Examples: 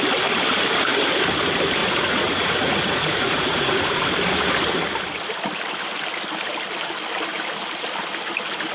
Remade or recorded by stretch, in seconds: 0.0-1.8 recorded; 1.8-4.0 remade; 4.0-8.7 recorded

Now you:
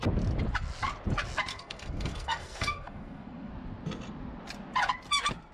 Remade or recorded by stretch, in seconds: 0.0-1.5 recorded; 1.5-3.5 remade; 3.5-5.5 recorded

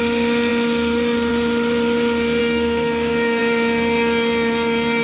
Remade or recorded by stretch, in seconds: 0.0-2.4 recorded; 2.4-3.4 remade; 3.4-5.0 recorded

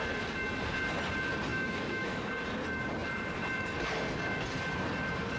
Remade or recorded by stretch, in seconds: 0.0-1.5 recorded; 1.5-2.3 remade; 2.3-5.4 recorded